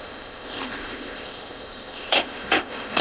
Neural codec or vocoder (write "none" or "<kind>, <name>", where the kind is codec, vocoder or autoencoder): codec, ZipCodec